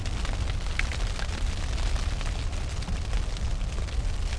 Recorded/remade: recorded